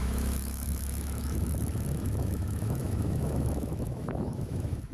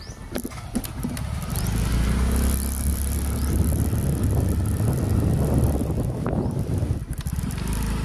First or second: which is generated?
first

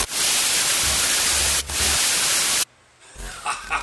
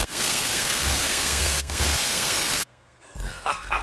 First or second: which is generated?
second